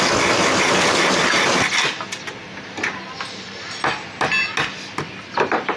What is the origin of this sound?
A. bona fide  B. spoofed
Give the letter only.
A